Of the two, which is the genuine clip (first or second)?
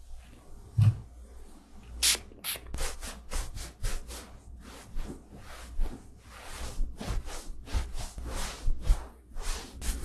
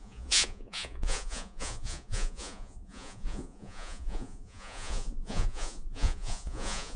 first